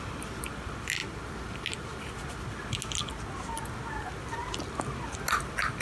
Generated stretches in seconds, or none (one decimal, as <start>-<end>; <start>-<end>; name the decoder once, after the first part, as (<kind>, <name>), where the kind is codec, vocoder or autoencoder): none